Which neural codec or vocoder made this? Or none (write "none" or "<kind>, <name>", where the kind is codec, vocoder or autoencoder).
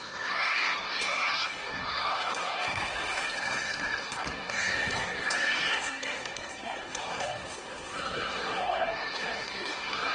codec, SNAC